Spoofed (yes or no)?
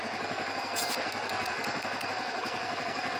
yes